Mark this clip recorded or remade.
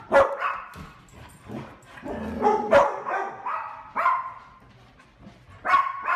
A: recorded